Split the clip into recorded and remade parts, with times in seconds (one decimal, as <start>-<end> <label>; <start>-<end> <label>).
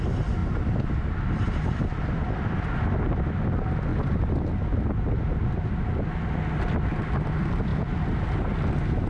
0.0-3.9 recorded; 3.9-4.5 remade; 4.5-9.1 recorded